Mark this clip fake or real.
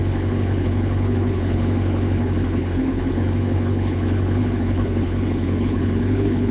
fake